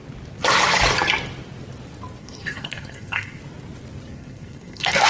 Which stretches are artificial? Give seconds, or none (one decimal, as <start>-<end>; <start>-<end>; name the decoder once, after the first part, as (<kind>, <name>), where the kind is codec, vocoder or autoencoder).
2.2-3.4 (codec, SNAC); 4.1-5.1